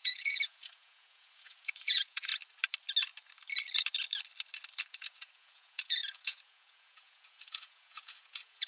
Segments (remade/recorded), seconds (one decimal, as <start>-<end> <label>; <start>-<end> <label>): 0.0-2.3 remade; 2.3-4.9 recorded; 4.9-8.7 remade